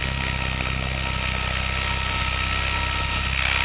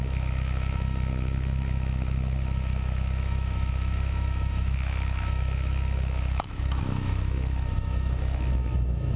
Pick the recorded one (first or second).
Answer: first